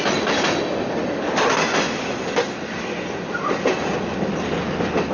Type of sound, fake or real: real